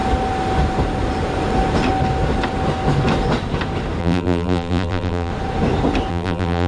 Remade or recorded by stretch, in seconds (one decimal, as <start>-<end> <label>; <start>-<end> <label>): 0.0-4.0 recorded; 4.0-5.3 remade; 5.3-6.1 recorded; 6.1-6.7 remade